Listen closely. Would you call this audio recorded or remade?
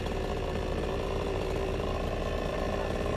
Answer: remade